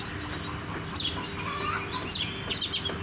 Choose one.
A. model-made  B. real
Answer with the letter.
B